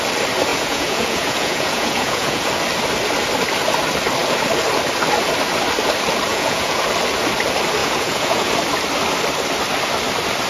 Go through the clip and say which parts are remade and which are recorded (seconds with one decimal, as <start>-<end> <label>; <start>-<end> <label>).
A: 0.0-0.5 recorded; 0.5-2.5 remade; 2.5-6.3 recorded; 6.3-6.8 remade; 6.8-7.8 recorded; 7.8-8.5 remade; 8.5-10.5 recorded